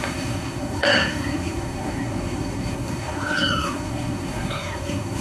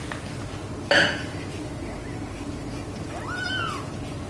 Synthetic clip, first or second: first